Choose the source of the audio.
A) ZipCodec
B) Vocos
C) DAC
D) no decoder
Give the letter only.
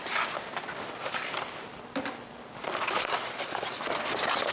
D